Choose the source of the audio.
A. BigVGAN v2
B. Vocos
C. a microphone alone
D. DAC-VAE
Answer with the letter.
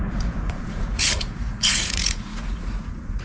B